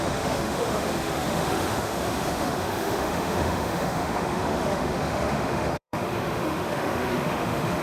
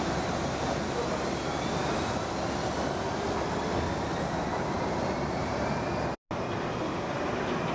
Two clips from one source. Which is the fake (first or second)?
first